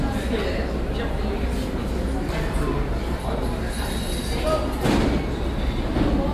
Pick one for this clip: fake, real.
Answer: real